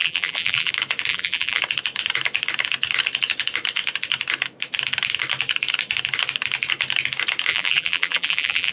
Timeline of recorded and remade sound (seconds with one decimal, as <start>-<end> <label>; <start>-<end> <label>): 0.0-0.7 remade; 0.7-1.1 recorded; 1.1-1.6 remade; 1.6-7.5 recorded; 7.5-8.7 remade